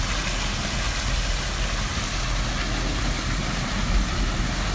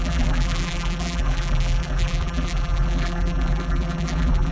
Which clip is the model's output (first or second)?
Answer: second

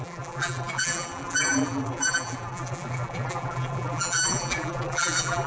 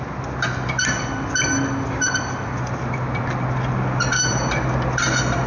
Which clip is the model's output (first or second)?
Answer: first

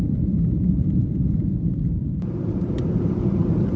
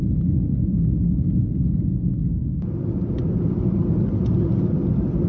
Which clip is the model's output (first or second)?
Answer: first